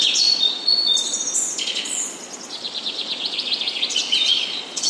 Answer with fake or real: fake